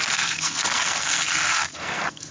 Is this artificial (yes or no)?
yes